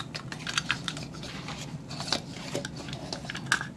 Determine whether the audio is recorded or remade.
recorded